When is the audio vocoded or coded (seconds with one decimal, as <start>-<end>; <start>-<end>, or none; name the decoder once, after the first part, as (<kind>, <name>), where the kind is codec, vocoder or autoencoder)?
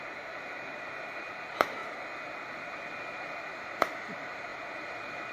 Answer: 0.0-1.8 (vocoder, BigVGAN v2); 2.6-5.3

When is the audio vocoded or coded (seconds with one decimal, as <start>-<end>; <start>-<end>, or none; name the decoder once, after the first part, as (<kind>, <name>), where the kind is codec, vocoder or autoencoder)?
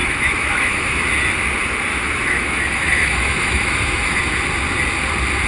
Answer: 0.0-1.0 (autoencoder, DAC-VAE); 1.9-4.2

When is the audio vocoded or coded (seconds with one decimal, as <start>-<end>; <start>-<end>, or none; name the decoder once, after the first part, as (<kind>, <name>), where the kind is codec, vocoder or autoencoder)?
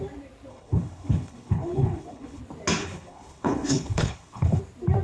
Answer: 0.5-2.4 (codec, HILCodec); 2.8-4.6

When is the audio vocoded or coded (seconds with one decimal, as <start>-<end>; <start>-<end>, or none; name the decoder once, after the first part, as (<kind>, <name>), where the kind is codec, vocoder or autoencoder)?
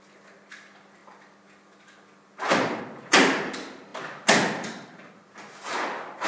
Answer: none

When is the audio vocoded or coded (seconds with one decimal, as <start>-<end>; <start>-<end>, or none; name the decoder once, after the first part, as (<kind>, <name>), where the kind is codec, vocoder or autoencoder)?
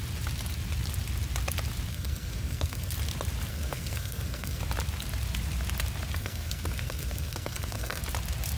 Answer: 1.9-2.9 (codec, SNAC); 3.5-4.6; 6.2-8.0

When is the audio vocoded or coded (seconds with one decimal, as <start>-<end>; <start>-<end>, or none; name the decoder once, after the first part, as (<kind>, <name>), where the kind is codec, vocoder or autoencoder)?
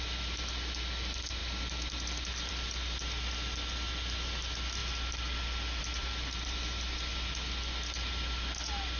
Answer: none